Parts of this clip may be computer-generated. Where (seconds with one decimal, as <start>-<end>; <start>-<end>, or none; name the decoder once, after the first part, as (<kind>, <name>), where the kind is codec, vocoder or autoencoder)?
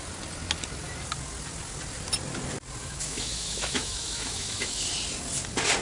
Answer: 2.8-4.9 (autoencoder, DAC-VAE)